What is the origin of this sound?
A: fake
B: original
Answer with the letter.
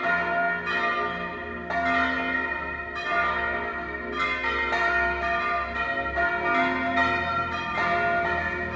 B